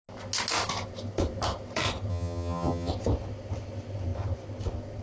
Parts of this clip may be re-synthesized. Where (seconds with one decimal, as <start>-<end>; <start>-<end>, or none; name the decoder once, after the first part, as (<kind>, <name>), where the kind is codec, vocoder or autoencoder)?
2.1-2.9 (vocoder, HiFi-GAN)